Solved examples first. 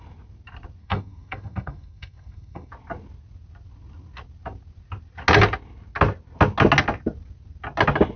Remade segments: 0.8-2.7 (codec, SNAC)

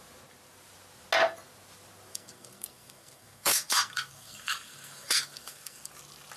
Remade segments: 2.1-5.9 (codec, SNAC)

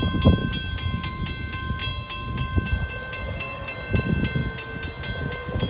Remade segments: none

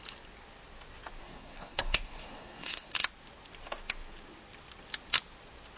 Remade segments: 1.2-2.9 (codec, SNAC)

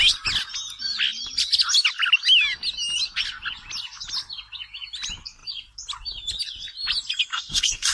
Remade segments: 7.3-7.9 (codec, SNAC)

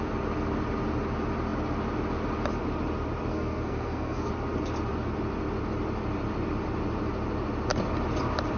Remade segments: 3.3-4.3 (codec, SNAC)

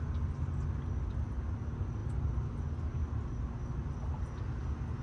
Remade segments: none